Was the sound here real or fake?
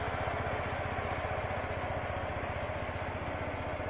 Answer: real